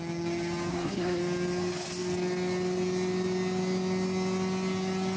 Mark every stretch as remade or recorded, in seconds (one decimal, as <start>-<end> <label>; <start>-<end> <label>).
0.0-0.7 recorded; 0.7-1.2 remade; 1.2-5.2 recorded

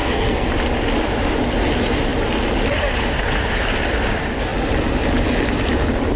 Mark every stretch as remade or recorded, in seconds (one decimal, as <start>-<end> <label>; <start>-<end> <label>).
0.0-0.5 remade; 0.5-6.2 recorded

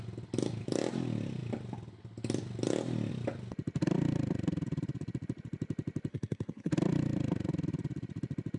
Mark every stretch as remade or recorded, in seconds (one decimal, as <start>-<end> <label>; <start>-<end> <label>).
0.0-6.1 recorded; 6.1-6.7 remade; 6.7-8.6 recorded

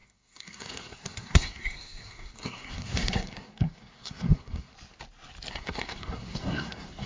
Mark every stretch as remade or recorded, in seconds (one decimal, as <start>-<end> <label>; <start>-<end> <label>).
0.0-4.7 remade; 4.7-5.5 recorded; 5.5-7.1 remade

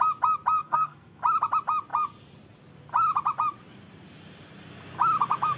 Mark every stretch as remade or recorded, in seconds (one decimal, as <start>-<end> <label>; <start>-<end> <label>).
0.0-0.6 recorded; 0.6-1.2 remade; 1.2-5.6 recorded

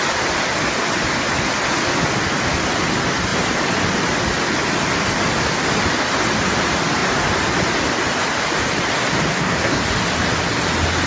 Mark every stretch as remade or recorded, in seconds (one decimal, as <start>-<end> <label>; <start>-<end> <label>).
0.0-9.3 recorded; 9.3-9.8 remade; 9.8-11.1 recorded

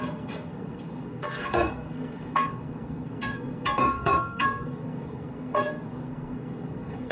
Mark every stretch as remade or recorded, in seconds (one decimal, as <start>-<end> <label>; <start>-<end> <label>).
0.0-7.1 remade